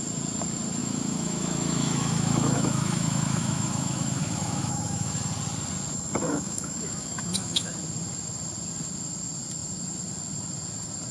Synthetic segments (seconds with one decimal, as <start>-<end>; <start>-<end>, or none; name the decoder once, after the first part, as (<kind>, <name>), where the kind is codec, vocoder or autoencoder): 0.8-5.1 (autoencoder, DAC-VAE); 6.3-7.7